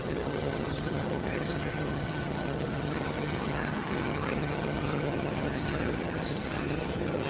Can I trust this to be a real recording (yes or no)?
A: no